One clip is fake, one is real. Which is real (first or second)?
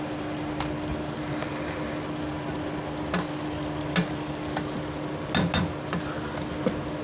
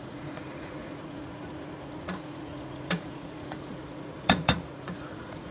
first